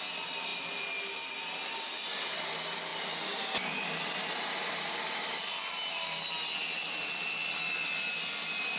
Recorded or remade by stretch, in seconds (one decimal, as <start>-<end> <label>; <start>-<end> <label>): 0.0-8.8 recorded